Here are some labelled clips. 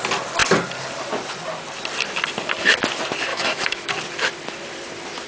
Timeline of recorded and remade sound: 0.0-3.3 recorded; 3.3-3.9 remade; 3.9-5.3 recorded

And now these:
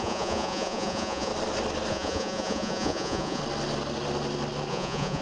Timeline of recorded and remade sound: 0.0-1.3 remade; 1.3-1.9 recorded; 1.9-3.4 remade; 3.4-4.7 recorded; 4.7-5.2 remade

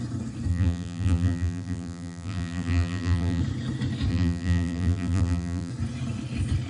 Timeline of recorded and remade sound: 0.0-0.5 recorded; 0.5-3.4 remade; 3.4-4.1 recorded; 4.1-5.7 remade; 5.7-6.7 recorded

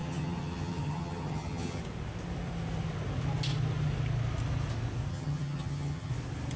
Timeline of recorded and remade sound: 0.0-1.8 remade; 1.8-5.1 recorded; 5.1-6.1 remade; 6.1-6.6 recorded